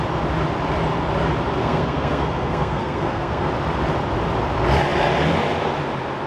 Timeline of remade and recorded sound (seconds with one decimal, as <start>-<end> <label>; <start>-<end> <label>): 0.0-1.6 recorded; 1.6-3.5 remade; 3.5-6.3 recorded